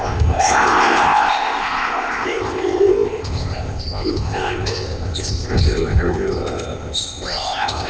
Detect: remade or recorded remade